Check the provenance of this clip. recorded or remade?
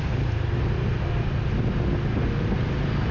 recorded